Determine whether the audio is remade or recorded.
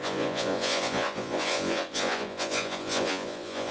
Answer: remade